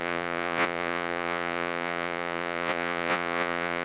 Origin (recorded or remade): remade